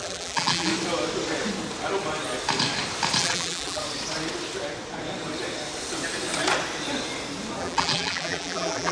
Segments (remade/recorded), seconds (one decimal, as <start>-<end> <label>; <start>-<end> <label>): 0.0-0.7 remade; 0.7-3.2 recorded; 3.2-3.8 remade; 3.8-7.6 recorded; 7.6-8.9 remade